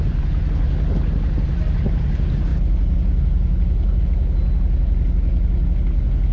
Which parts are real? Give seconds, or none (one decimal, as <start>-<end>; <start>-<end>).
0.0-6.3